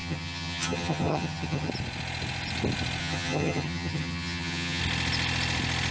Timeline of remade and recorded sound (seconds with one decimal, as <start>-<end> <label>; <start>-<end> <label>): 0.0-1.7 remade; 1.7-3.0 recorded; 3.0-4.8 remade; 4.8-5.9 recorded